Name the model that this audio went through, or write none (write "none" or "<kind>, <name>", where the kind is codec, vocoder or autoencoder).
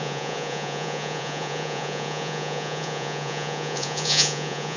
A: vocoder, Vocos